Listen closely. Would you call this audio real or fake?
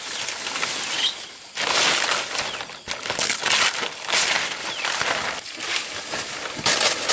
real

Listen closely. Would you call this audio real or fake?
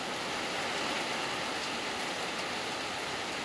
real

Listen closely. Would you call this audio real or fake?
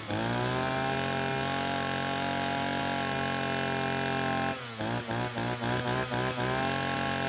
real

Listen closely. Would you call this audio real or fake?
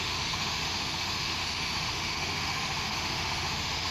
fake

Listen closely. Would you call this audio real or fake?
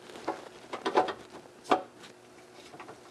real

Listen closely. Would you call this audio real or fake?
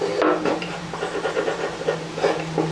real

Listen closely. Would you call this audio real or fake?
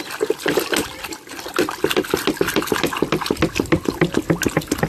real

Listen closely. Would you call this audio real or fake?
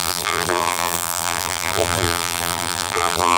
fake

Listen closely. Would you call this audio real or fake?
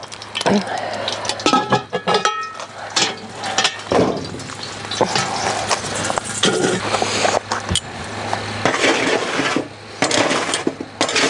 real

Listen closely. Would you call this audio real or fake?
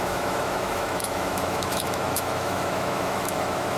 fake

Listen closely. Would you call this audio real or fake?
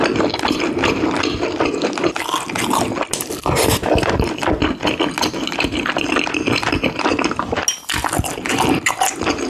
real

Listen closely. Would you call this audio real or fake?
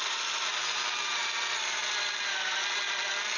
real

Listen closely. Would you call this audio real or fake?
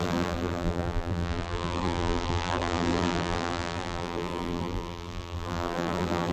fake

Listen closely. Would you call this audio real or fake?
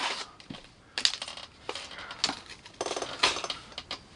real